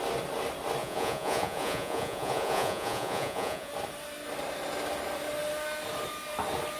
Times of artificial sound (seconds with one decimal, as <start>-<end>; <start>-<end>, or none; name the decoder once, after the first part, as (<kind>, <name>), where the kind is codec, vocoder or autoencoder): 0.8-3.7 (vocoder, Vocos)